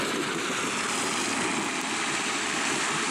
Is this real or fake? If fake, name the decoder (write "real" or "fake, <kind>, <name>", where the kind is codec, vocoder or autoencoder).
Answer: fake, vocoder, BigVGAN v2